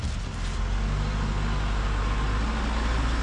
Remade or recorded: recorded